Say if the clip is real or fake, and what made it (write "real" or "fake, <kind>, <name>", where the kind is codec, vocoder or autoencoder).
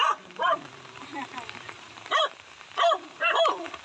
fake, vocoder, BigVGAN v2